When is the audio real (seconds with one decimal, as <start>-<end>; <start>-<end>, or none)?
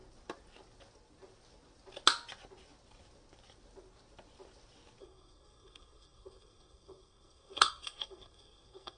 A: 0.0-5.0